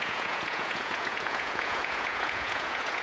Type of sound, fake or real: fake